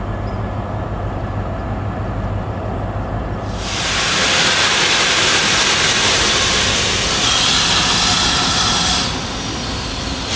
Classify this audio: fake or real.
real